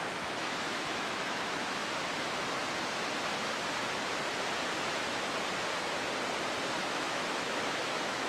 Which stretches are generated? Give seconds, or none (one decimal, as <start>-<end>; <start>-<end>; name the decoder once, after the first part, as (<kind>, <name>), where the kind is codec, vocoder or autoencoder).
0.0-1.8 (autoencoder, DAC-VAE); 6.8-8.3